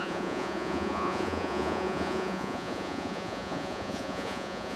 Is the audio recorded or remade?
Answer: remade